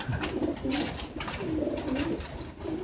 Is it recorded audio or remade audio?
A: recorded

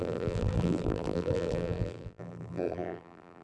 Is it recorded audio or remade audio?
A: remade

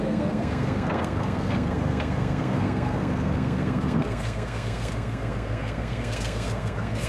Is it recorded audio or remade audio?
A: remade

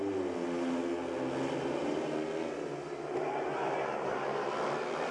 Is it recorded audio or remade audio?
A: recorded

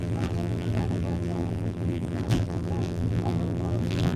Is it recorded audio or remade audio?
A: remade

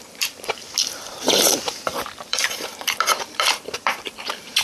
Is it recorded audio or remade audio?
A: remade